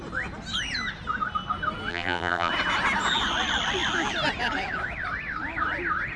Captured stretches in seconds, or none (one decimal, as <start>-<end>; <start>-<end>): 0.0-1.9; 2.5-6.2